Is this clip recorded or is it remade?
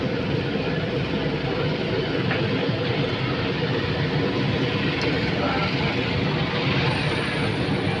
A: recorded